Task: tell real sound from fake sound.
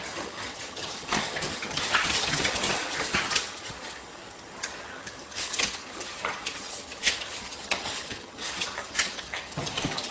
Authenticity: fake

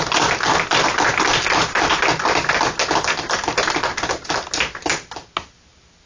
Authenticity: real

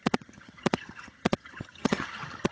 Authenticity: fake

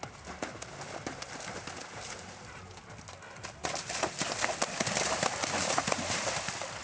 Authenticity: real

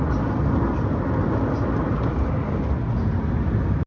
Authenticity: real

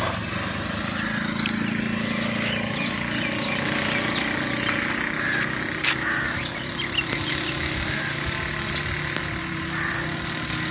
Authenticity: real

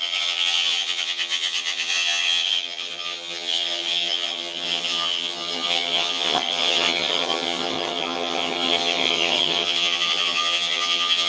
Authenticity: fake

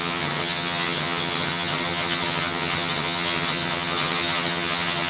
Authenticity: fake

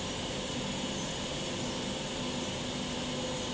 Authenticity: real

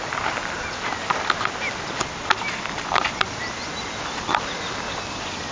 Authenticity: real